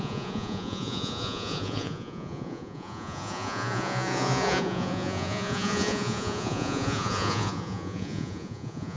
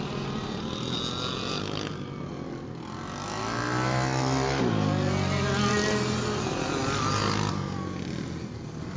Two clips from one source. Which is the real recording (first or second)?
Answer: second